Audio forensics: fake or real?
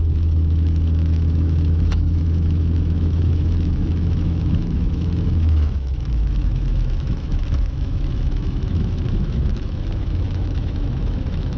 fake